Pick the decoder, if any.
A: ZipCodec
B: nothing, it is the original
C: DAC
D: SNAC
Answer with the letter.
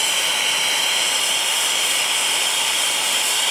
B